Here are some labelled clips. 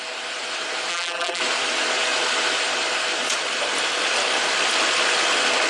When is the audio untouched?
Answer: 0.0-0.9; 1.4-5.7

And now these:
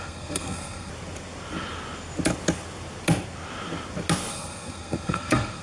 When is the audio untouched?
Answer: 0.9-4.3

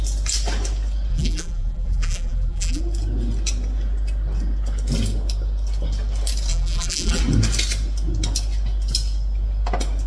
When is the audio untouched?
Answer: 0.0-1.1; 2.8-6.5; 7.2-10.1

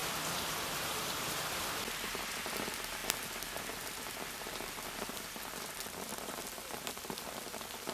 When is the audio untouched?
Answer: 1.6-7.9

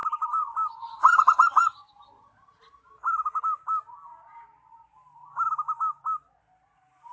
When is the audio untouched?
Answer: 0.0-7.1